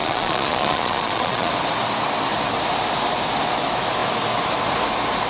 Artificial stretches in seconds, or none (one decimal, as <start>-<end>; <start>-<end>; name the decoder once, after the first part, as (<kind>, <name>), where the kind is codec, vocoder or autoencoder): 0.0-1.5 (vocoder, Vocos)